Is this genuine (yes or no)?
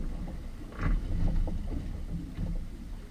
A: yes